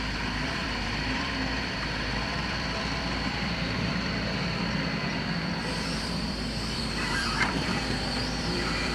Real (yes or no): no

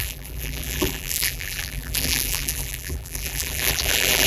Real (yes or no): no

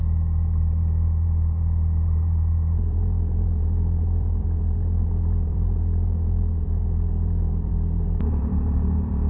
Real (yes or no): no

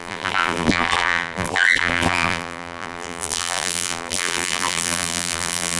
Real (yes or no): no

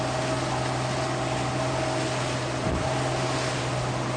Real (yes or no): yes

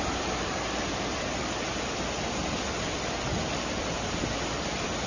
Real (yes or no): yes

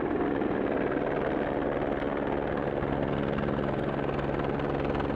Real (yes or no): yes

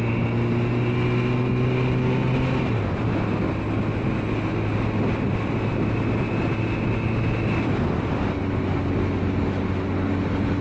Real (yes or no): yes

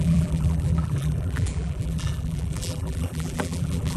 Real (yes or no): no